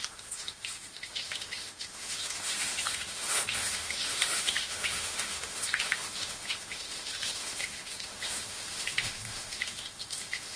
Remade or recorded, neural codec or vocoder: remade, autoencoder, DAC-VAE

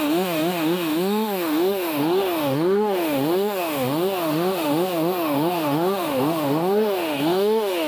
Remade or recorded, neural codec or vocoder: remade, autoencoder, DAC-VAE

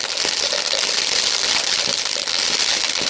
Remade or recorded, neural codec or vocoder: recorded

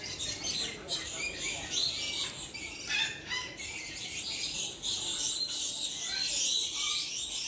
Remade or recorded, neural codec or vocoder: recorded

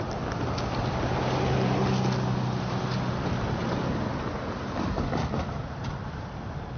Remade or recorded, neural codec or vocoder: recorded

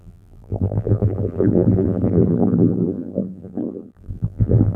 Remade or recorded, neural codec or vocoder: remade, vocoder, BigVGAN v2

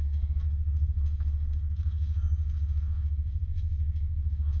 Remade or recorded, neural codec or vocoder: remade, codec, SNAC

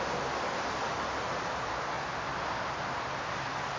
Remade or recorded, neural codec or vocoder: recorded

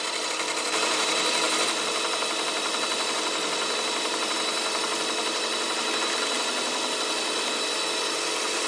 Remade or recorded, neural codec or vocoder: recorded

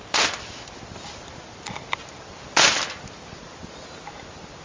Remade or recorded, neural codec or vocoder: recorded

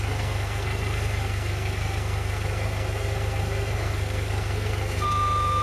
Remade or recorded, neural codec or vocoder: remade, codec, SNAC